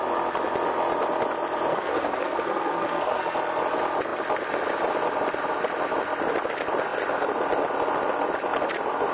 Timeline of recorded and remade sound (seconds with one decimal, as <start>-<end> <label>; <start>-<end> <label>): 0.0-1.7 recorded; 1.7-3.2 remade; 3.2-9.1 recorded